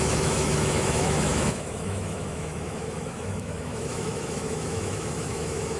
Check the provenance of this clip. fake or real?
fake